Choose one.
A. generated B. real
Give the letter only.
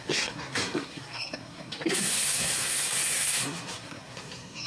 A